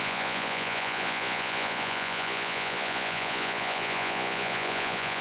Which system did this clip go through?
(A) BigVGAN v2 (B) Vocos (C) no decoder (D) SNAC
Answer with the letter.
B